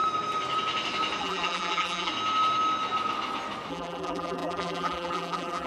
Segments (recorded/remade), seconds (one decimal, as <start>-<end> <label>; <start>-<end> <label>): 0.0-1.2 recorded; 1.2-2.1 remade; 2.1-3.7 recorded; 3.7-5.7 remade